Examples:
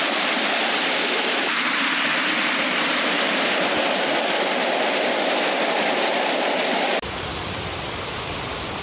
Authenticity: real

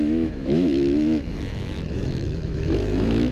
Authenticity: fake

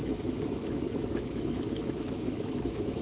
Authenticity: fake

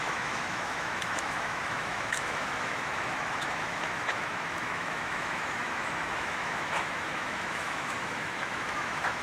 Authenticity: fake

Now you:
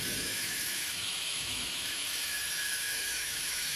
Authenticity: fake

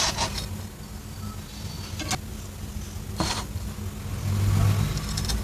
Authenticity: real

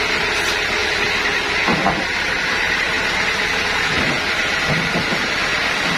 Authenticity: real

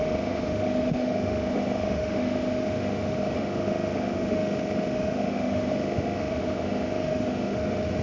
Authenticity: fake